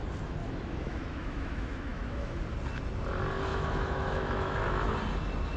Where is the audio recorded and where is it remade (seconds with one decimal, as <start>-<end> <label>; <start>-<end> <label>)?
0.0-0.4 recorded; 0.4-2.4 remade; 2.4-3.5 recorded; 3.5-4.9 remade; 4.9-5.6 recorded